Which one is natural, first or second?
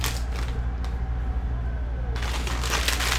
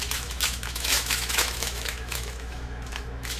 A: first